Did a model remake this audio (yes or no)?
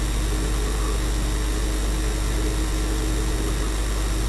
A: no